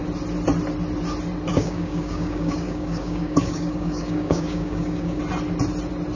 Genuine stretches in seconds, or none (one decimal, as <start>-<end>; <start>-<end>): 0.0-1.5; 5.2-6.2